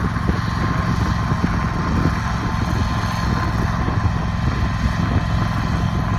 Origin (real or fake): real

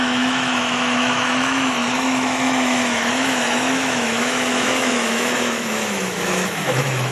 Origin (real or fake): fake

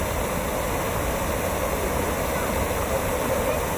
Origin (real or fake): real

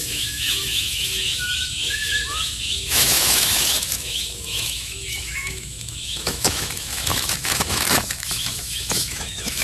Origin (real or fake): fake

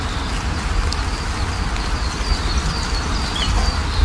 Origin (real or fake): real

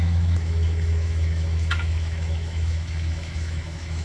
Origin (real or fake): fake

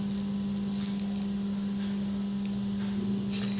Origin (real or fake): real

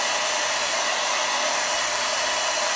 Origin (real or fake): real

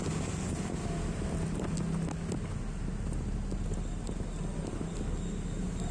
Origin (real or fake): real